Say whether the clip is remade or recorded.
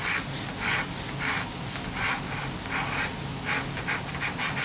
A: recorded